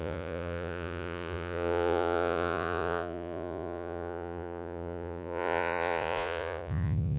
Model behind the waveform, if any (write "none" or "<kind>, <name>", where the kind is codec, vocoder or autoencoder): vocoder, Vocos